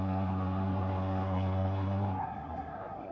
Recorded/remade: remade